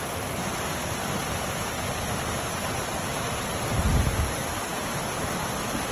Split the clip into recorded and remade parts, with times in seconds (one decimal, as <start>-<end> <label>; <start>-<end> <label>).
0.0-5.9 recorded

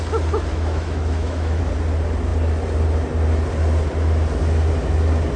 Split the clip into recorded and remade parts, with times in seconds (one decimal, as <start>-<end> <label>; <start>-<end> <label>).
0.0-0.5 recorded; 0.5-1.6 remade; 1.6-5.4 recorded

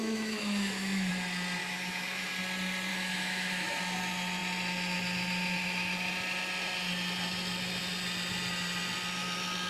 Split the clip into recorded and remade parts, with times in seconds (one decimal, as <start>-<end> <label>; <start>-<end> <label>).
0.0-1.1 remade; 1.1-1.6 recorded; 1.6-2.3 remade; 2.3-2.9 recorded; 2.9-3.8 remade; 3.8-9.7 recorded

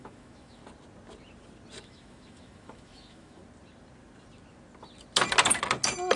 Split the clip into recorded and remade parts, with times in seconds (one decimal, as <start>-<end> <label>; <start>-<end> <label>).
0.0-0.6 remade; 0.6-1.8 recorded; 1.8-3.4 remade; 3.4-6.2 recorded